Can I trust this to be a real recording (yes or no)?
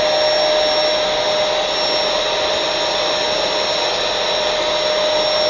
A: yes